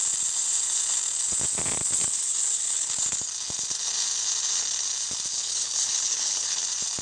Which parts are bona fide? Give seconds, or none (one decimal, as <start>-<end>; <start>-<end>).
0.0-2.0; 3.0-5.3; 6.6-7.0